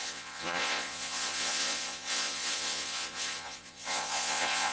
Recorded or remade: remade